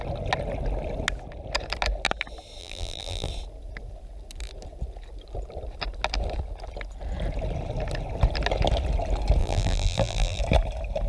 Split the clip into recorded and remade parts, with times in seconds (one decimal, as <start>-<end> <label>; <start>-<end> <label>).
0.0-2.6 recorded; 2.6-3.3 remade; 3.3-9.4 recorded; 9.4-10.4 remade; 10.4-11.1 recorded